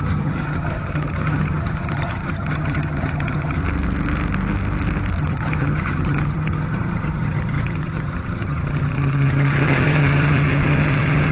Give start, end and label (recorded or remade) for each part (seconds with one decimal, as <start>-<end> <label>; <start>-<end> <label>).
0.0-3.6 remade; 3.6-5.2 recorded; 5.2-11.3 remade